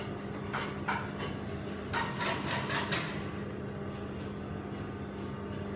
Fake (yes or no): no